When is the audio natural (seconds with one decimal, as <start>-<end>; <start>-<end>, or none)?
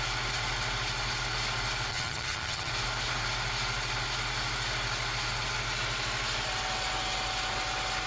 0.0-1.9; 2.7-8.1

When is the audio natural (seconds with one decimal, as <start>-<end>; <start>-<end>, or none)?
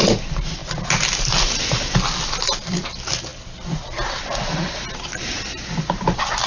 0.0-6.5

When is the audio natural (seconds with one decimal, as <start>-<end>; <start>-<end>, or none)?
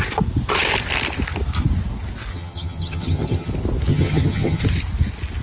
0.0-2.3; 3.5-3.9; 4.6-5.4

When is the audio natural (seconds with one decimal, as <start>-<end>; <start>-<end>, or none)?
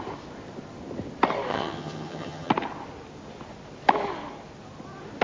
0.0-1.5; 2.5-5.2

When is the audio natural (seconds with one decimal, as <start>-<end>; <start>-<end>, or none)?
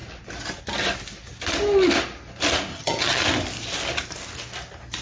0.0-2.7; 3.2-5.0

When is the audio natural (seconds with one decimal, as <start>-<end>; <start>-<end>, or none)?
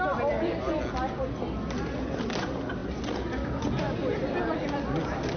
0.0-5.4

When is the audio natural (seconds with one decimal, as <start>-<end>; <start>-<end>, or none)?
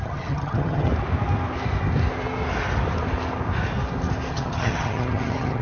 0.9-4.3